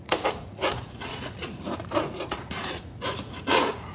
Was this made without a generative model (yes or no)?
no